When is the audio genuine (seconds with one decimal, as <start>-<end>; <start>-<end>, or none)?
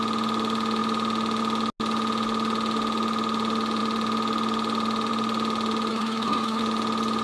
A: 0.0-5.9; 6.6-7.2